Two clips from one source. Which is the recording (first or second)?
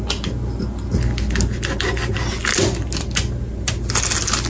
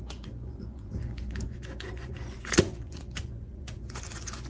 first